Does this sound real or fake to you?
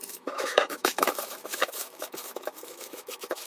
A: fake